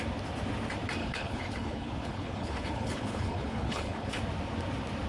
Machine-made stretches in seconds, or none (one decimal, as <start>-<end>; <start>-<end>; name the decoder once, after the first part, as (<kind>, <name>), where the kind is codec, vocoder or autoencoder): 1.0-4.1 (codec, HILCodec)